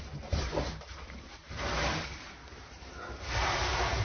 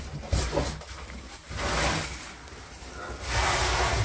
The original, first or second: second